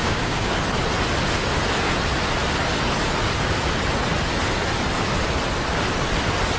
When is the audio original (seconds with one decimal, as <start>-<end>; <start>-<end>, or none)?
0.5-6.6